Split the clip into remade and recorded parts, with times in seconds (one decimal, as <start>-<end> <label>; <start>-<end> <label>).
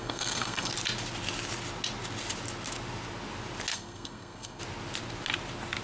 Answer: 0.0-0.7 remade; 0.7-3.7 recorded; 3.7-4.6 remade; 4.6-5.8 recorded